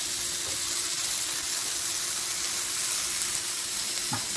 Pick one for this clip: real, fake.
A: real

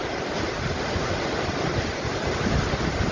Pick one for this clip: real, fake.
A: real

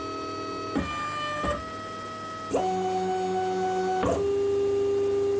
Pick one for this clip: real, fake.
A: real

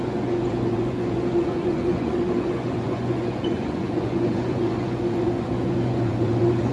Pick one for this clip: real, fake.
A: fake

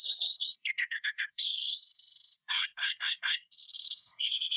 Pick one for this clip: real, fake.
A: fake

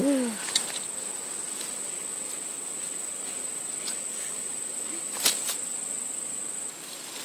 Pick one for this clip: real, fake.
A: real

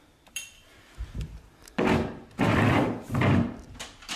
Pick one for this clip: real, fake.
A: fake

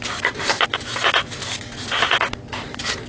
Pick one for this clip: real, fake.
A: real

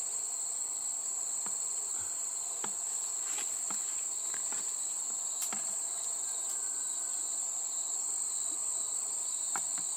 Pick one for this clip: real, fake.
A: fake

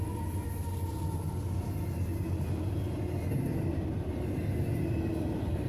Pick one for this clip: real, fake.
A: real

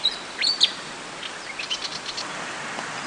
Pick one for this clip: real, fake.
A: real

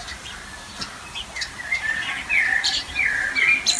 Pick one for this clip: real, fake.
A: real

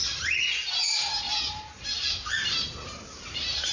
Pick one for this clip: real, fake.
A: fake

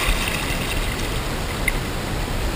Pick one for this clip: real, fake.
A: real